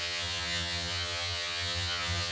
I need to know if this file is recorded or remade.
remade